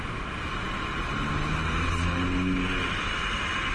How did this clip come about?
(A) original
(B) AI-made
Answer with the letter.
A